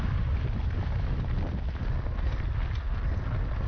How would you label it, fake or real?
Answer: real